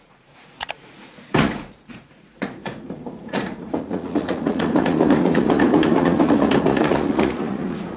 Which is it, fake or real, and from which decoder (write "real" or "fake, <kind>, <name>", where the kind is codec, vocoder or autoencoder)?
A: fake, vocoder, Vocos